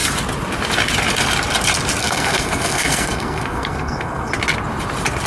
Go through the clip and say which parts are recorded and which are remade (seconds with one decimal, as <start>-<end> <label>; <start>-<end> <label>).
0.0-2.0 recorded; 2.0-4.3 remade; 4.3-5.3 recorded